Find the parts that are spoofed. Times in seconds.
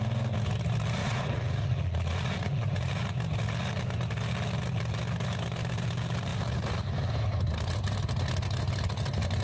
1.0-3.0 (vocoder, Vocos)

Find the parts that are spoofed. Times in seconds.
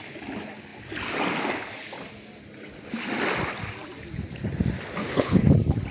5.0-5.5 (codec, HILCodec)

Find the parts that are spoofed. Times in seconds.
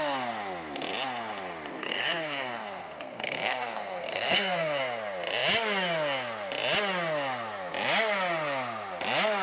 1.7-4.8 (codec, SNAC)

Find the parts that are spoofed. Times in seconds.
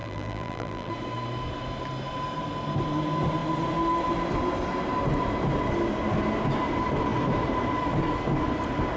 0.0-0.9 (vocoder, BigVGAN v2)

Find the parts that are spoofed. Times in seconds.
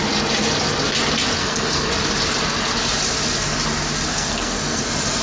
1.4-1.9 (codec, SNAC); 4.1-4.8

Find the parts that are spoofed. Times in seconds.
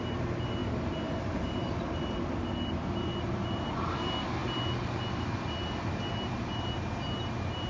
none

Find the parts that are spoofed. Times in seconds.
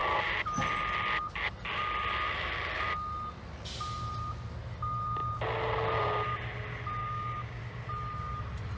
7.0-7.6 (codec, DAC)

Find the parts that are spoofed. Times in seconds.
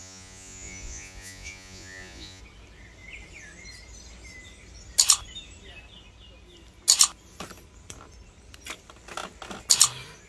0.0-2.4 (vocoder, Vocos)